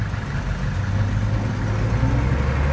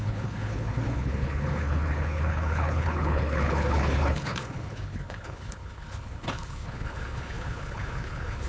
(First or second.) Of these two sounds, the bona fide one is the first